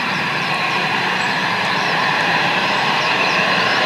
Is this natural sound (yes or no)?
no